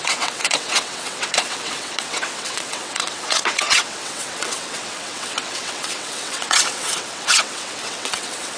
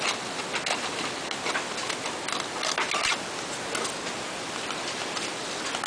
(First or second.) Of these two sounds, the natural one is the second